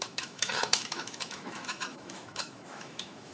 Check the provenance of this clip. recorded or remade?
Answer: remade